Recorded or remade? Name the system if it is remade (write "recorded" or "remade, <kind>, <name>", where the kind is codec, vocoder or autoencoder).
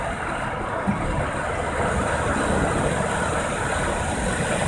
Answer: recorded